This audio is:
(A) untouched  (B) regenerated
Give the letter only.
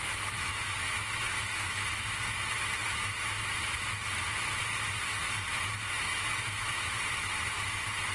B